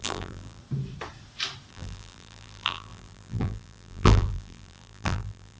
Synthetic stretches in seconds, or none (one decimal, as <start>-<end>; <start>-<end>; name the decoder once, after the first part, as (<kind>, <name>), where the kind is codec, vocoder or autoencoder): 0.0-0.6 (vocoder, BigVGAN v2); 1.7-5.6